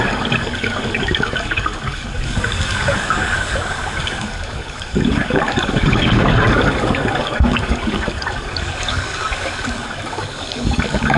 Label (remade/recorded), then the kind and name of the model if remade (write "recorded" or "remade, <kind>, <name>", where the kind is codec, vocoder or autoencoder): remade, codec, DAC